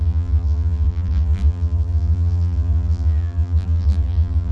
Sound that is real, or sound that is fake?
fake